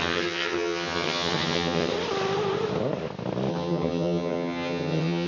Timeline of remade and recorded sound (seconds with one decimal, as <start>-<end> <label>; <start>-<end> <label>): 0.0-1.9 remade; 1.9-3.5 recorded; 3.5-5.3 remade